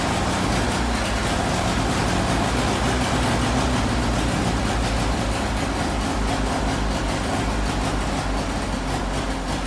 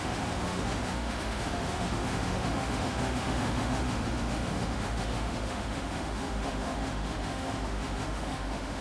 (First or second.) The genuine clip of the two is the first